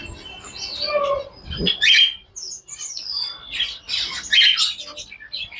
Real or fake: real